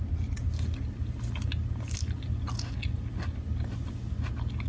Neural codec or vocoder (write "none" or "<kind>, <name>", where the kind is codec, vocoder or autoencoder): none